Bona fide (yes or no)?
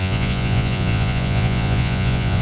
no